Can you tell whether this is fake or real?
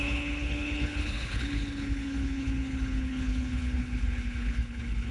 fake